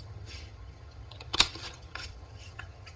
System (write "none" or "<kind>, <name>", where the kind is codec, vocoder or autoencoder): vocoder, HiFi-GAN